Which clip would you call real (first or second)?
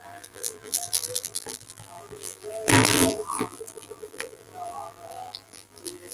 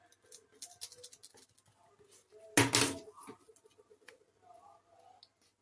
second